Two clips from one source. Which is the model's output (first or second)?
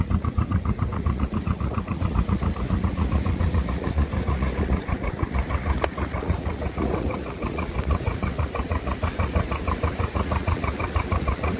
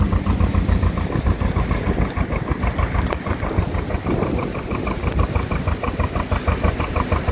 first